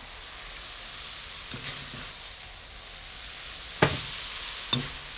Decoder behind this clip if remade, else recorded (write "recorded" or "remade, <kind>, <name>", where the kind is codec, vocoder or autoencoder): recorded